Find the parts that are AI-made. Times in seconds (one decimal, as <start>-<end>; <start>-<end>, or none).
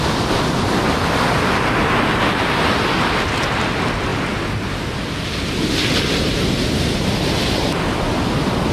none